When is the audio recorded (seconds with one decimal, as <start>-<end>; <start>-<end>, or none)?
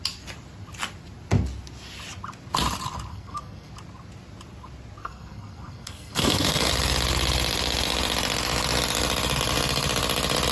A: 0.0-3.1; 3.7-5.0; 6.7-10.5